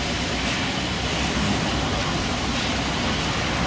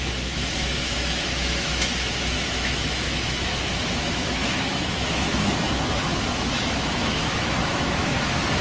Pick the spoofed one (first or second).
second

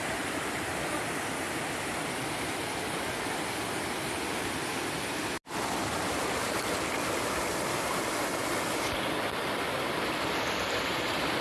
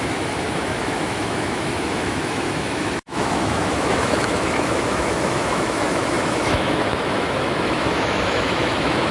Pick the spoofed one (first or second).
second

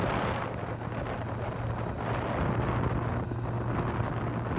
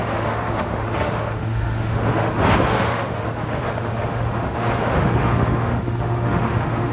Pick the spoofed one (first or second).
second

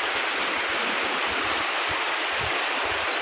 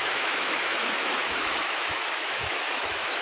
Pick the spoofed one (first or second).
second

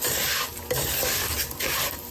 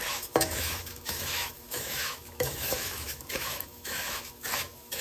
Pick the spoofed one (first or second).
second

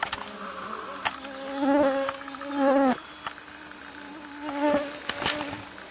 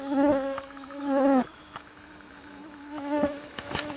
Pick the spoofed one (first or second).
second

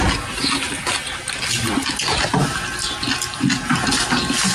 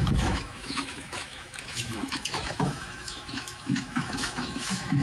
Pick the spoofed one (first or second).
second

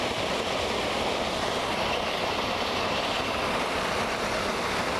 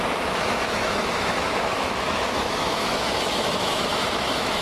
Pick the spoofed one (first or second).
second